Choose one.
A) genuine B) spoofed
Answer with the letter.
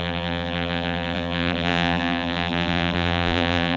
B